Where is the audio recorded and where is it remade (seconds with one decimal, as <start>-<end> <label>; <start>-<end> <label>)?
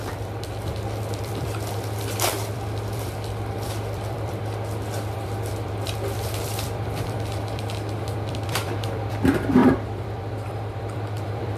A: 0.0-11.6 remade